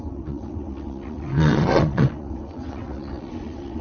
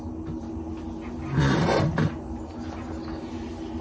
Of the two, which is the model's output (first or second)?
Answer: first